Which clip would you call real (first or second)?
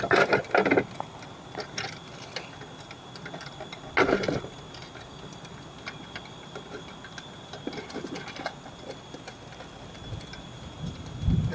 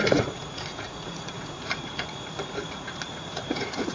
first